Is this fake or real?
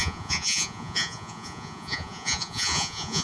fake